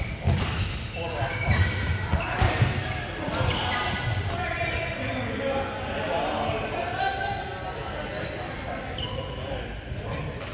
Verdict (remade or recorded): recorded